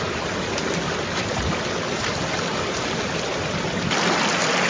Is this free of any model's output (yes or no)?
yes